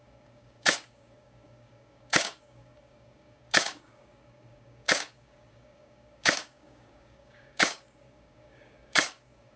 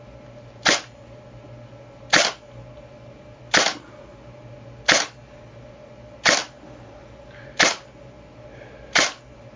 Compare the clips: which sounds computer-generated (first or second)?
first